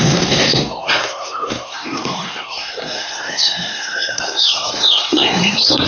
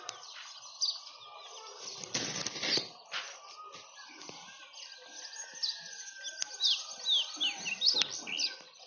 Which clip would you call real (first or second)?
second